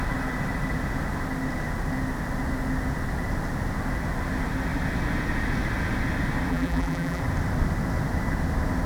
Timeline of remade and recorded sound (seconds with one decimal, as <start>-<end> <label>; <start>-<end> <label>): 0.0-6.5 recorded; 6.5-7.2 remade; 7.2-8.9 recorded